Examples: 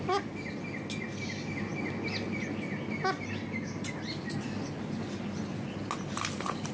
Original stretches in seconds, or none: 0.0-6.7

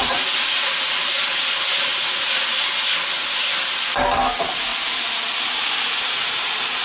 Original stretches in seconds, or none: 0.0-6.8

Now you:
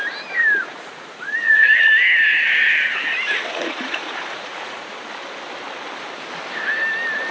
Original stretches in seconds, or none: 0.0-0.6; 1.9-3.5; 4.9-7.3

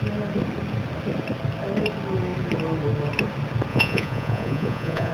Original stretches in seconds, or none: 0.0-3.7

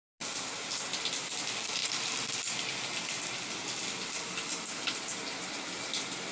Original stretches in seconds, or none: 0.0-6.3

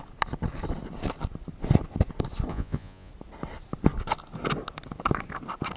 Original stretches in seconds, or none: 0.0-2.5; 3.1-5.8

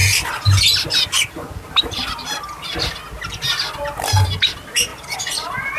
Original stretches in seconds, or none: 0.0-5.8